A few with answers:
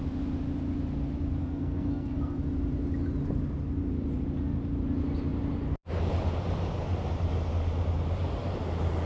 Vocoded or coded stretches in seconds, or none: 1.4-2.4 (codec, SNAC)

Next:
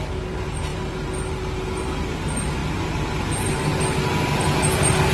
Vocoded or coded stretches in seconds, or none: none